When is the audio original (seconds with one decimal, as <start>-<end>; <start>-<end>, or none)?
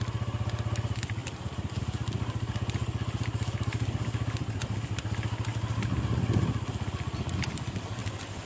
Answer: 0.0-1.2; 1.8-8.0